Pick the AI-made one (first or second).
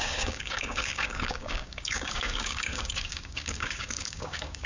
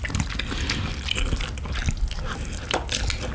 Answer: first